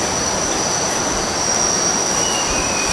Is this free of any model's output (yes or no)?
yes